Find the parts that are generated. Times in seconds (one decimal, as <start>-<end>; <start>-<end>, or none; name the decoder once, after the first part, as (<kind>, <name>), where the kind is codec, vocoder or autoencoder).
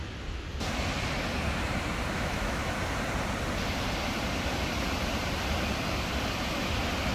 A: 2.1-2.6 (autoencoder, DAC-VAE)